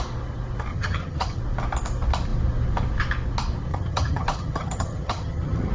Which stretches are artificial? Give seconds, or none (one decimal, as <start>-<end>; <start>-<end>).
0.7-1.4; 3.7-5.7